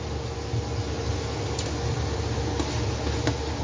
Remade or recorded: recorded